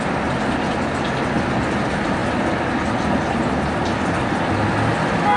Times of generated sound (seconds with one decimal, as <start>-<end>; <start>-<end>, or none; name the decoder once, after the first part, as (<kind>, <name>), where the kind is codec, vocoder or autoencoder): none